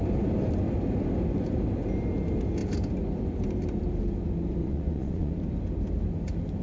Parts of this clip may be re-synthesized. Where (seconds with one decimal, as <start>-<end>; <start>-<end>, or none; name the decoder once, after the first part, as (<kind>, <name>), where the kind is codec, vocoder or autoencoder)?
4.6-5.3 (vocoder, Vocos)